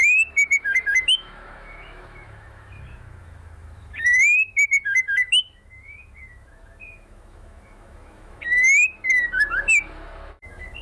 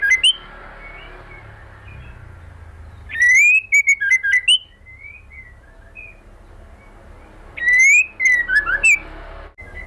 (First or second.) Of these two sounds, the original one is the second